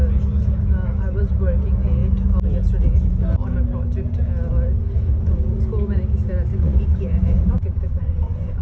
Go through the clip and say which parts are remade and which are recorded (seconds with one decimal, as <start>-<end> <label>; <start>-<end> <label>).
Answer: 0.0-6.5 recorded; 6.5-8.6 remade